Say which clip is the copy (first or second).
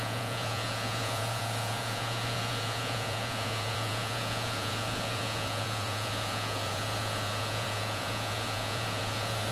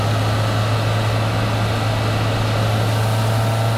first